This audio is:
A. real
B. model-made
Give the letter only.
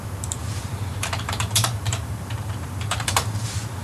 B